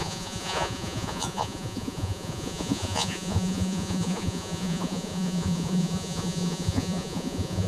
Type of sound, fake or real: fake